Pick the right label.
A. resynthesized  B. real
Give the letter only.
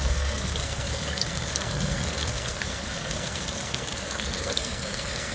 A